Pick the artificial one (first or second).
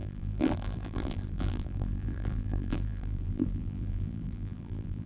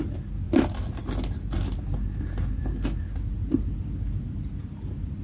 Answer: first